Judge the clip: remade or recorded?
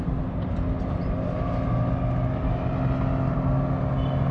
recorded